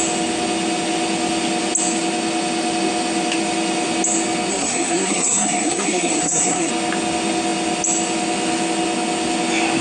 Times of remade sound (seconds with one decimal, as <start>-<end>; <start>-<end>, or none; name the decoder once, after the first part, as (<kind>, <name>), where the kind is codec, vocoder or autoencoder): 4.5-6.7 (codec, SNAC)